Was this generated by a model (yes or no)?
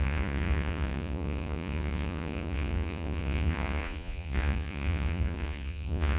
yes